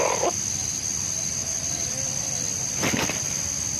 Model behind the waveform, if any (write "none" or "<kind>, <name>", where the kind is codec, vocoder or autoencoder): none